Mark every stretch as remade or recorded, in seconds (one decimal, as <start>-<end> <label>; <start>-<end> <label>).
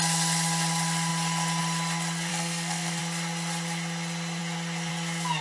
0.0-2.3 recorded; 2.3-3.0 remade; 3.0-5.4 recorded